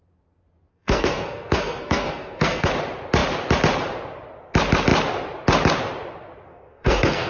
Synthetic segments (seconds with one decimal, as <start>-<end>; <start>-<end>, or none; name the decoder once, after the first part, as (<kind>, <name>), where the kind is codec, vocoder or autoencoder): 0.7-2.7 (codec, SNAC); 6.5-7.3

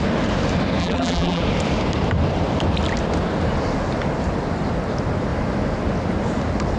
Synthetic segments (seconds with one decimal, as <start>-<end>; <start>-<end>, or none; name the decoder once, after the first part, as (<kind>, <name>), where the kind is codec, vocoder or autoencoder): 0.8-1.4 (vocoder, BigVGAN v2)

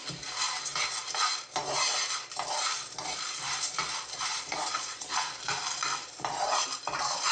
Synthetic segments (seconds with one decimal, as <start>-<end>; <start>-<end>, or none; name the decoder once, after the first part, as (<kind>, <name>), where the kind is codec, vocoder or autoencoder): 4.3-5.1 (vocoder, Vocos)

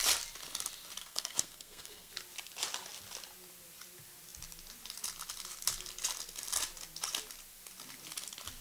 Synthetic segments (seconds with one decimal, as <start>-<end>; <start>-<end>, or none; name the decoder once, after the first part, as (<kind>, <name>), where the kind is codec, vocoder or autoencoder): 1.0-2.1 (codec, SNAC)